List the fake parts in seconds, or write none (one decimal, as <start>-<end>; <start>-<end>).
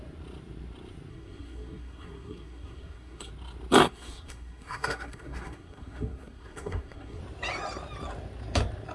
1.1-3.3; 3.8-7.2